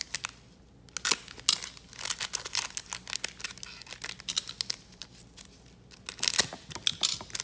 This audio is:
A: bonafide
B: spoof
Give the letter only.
A